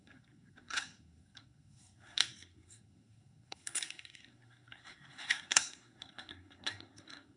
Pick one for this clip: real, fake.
fake